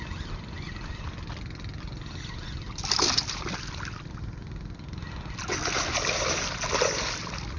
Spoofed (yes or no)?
no